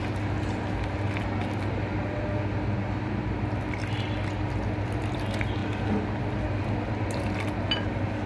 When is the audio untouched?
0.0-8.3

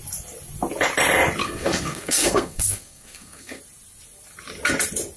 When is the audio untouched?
0.0-1.4; 3.6-5.2

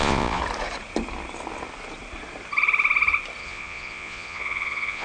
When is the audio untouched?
0.4-3.4

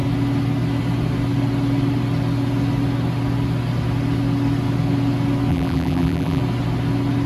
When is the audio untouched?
0.0-5.5; 6.4-7.3